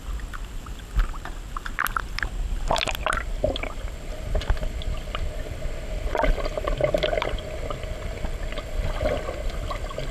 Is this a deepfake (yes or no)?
no